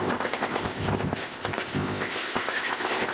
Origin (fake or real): fake